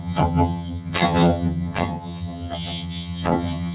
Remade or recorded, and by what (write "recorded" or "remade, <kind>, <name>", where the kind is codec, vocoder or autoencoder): remade, vocoder, HiFi-GAN